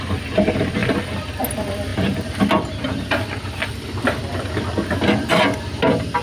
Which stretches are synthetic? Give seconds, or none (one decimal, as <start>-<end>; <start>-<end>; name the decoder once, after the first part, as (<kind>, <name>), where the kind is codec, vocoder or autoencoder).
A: none